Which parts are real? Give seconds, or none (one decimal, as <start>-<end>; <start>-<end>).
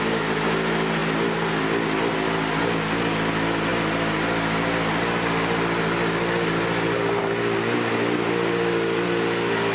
0.0-9.7